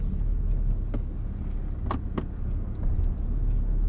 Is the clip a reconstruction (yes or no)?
no